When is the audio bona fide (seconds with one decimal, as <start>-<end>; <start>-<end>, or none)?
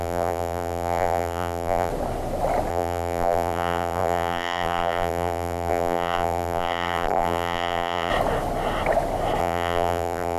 1.9-2.7; 8.1-9.4